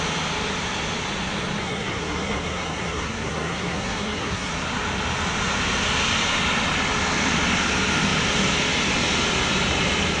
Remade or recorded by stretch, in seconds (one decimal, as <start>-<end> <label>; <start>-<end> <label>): 0.0-1.6 recorded; 1.6-4.5 remade; 4.5-10.2 recorded